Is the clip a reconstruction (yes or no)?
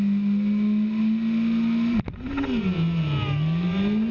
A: no